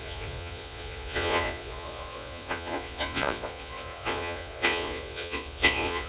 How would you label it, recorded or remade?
remade